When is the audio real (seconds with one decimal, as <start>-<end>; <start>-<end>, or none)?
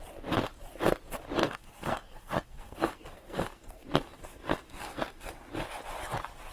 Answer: 0.0-1.4; 5.3-6.5